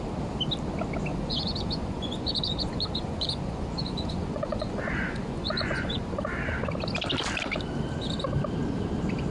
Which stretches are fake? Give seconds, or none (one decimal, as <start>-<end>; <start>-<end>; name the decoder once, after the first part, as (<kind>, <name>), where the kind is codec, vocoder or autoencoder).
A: 1.1-6.2 (vocoder, Vocos)